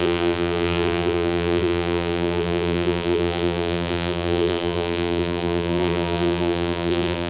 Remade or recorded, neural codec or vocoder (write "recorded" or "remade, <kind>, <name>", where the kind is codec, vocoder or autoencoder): remade, vocoder, BigVGAN v2